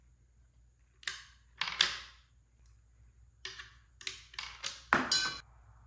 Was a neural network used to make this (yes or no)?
no